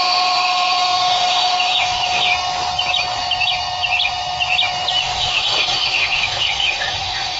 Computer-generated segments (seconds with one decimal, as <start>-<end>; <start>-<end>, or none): 0.0-2.3; 5.0-7.4